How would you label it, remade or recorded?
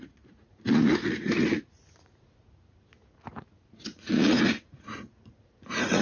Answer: remade